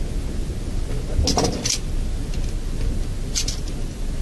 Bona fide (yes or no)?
yes